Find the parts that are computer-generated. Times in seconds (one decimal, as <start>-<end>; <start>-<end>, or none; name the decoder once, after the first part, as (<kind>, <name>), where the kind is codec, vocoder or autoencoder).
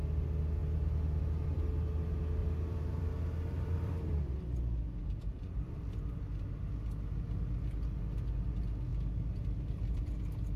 0.6-1.6 (vocoder, BigVGAN v2); 2.4-4.1; 5.0-5.8